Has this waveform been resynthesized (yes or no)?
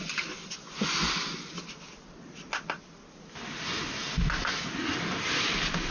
no